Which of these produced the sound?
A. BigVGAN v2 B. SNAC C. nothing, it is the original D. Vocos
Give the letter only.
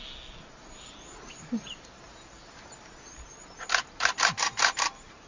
C